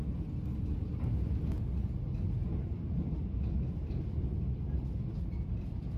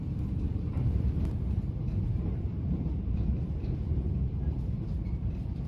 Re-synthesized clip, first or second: second